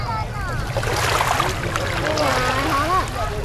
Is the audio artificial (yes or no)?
no